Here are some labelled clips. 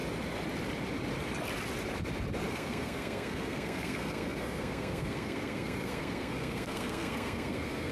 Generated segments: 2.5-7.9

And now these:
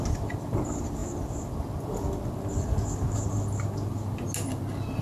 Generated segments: none

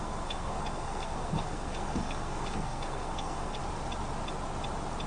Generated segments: 0.0-3.6